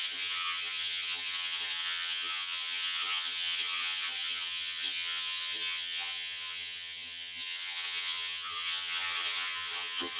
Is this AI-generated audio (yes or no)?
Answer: yes